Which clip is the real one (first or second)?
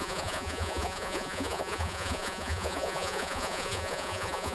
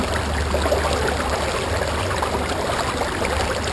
second